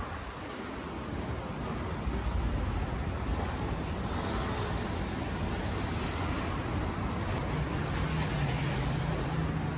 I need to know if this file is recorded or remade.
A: recorded